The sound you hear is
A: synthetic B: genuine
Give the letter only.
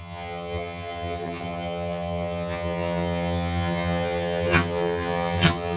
A